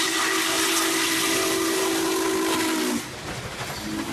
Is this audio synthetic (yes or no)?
no